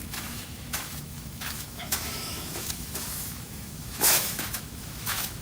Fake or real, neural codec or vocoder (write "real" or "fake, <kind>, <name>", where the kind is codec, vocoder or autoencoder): fake, autoencoder, DAC-VAE